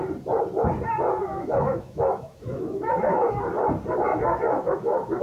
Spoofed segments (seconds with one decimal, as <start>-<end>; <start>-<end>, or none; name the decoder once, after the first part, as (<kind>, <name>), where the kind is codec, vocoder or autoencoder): 1.2-3.3 (autoencoder, DAC-VAE); 4.1-5.2